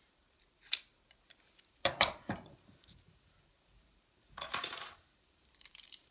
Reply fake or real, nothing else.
fake